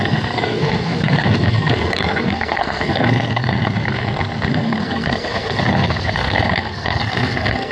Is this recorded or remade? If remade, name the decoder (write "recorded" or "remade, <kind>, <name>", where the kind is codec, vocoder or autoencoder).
remade, codec, SNAC